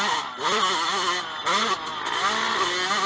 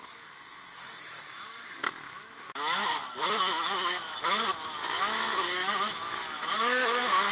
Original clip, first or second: first